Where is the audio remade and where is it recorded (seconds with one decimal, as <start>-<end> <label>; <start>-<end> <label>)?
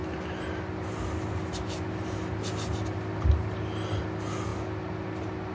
0.0-5.5 recorded